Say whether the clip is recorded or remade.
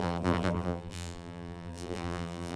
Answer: remade